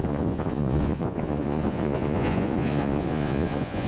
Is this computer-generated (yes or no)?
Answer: yes